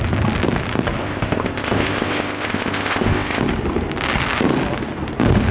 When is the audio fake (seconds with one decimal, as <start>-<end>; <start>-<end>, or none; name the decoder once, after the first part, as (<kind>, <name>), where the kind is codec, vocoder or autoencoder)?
1.0-3.4 (codec, ZipCodec)